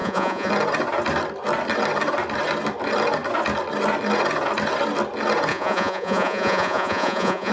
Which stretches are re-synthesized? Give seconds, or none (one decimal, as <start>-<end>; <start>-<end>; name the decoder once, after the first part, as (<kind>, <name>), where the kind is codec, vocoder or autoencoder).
0.0-0.5 (vocoder, Vocos); 5.5-7.5